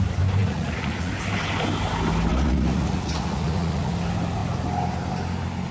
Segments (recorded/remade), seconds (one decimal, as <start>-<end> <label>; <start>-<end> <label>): 0.0-0.4 recorded; 0.4-1.1 remade; 1.1-2.3 recorded; 2.3-3.9 remade; 3.9-5.7 recorded